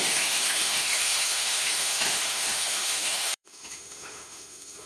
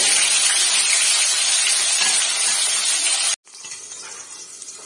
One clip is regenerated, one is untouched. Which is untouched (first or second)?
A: second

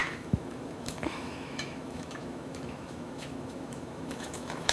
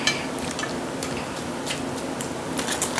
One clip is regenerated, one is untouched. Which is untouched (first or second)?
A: second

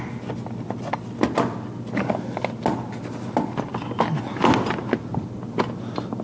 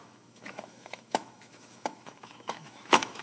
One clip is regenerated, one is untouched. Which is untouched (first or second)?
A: first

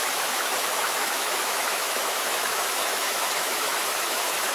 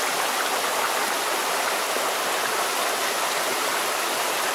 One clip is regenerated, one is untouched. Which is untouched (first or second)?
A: second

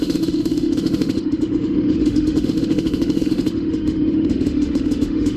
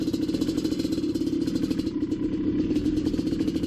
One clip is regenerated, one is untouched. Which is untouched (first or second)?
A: second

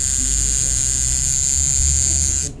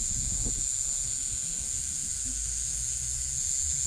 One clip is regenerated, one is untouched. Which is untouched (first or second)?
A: first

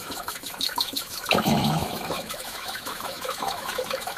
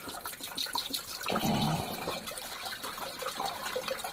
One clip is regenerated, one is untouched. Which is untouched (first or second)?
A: second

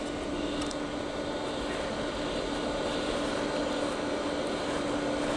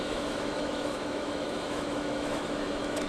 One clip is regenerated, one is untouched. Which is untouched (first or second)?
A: first